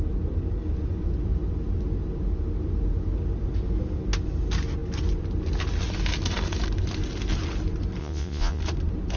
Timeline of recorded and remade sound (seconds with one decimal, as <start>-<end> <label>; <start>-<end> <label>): 0.0-8.0 recorded; 8.0-8.6 remade; 8.6-9.2 recorded